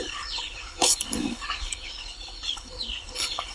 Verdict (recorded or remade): remade